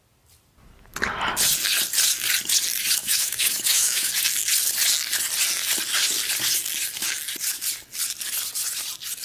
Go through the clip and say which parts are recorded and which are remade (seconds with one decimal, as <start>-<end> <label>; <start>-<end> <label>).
0.0-3.0 recorded; 3.0-4.1 remade; 4.1-9.2 recorded